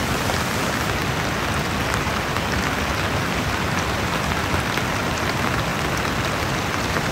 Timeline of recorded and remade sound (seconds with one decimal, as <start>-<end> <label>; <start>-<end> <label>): 0.0-1.0 remade; 1.0-2.1 recorded; 2.1-4.4 remade; 4.4-5.0 recorded; 5.0-5.7 remade; 5.7-6.4 recorded; 6.4-7.1 remade